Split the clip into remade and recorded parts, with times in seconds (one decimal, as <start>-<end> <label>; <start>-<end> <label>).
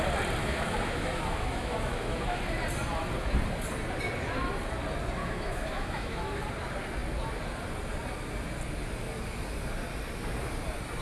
0.0-0.4 recorded; 0.4-2.4 remade; 2.4-5.2 recorded; 5.2-6.4 remade; 6.4-11.0 recorded